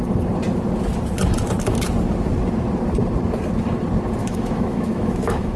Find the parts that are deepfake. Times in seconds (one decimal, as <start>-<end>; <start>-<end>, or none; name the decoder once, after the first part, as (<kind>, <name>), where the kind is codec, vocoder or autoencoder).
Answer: 4.2-5.6 (autoencoder, DAC-VAE)